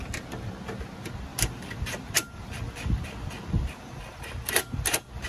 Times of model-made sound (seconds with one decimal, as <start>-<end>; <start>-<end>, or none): 1.3-4.5